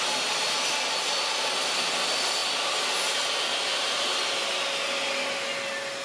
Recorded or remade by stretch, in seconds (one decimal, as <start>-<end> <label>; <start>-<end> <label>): 0.0-6.0 recorded